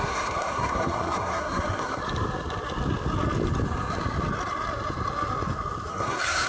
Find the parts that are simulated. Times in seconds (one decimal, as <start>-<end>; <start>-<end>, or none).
0.0-2.0; 5.9-6.5

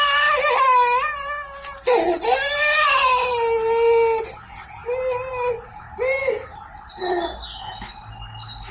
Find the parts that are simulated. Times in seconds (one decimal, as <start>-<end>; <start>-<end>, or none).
6.2-6.7

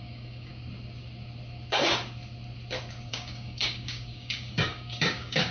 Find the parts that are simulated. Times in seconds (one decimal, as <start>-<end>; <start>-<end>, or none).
0.0-0.5; 3.1-5.5

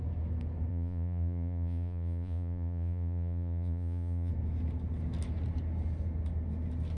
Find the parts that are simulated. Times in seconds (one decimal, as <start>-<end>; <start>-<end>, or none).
0.7-4.3

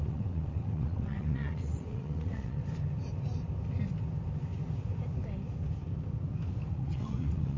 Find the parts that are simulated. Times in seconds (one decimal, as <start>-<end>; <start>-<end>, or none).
0.0-2.6; 6.7-7.6

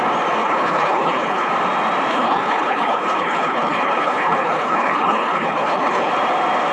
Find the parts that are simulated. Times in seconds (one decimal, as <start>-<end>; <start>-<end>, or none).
0.4-1.5; 2.1-6.1